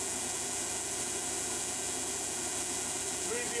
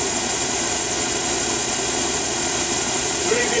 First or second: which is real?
first